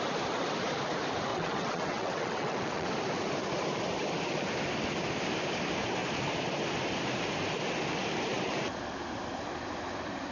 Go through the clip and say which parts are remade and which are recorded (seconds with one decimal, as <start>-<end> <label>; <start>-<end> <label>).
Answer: 0.0-1.3 recorded; 1.3-2.9 remade; 2.9-10.3 recorded